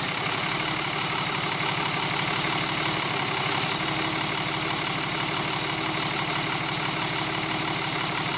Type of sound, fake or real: real